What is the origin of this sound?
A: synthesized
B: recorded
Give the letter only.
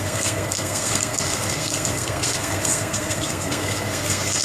A